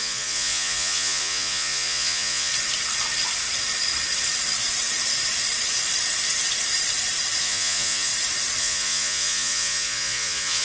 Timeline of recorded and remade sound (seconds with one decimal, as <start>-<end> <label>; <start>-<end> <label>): 0.0-2.5 remade; 2.5-7.4 recorded; 7.4-8.1 remade; 8.1-8.6 recorded; 8.6-10.6 remade